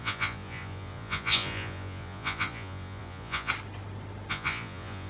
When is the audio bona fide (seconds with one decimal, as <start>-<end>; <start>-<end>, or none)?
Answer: 3.5-4.3